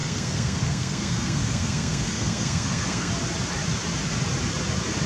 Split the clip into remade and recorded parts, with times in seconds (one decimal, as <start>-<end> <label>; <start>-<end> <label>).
0.0-3.1 remade; 3.1-5.1 recorded